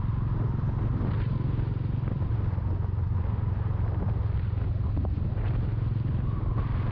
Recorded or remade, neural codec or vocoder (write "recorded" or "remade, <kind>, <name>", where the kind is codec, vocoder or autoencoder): recorded